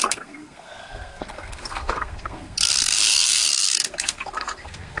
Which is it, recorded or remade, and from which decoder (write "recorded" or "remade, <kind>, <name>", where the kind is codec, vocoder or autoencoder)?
remade, codec, SNAC